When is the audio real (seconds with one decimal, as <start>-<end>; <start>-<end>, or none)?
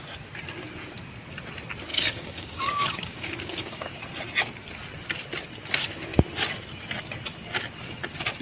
0.0-1.9; 4.0-8.4